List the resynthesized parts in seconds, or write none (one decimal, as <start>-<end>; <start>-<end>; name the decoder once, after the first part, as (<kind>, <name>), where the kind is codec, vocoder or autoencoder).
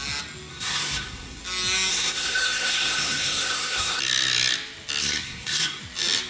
0.5-1.4 (codec, SNAC); 1.9-4.0; 5.0-5.8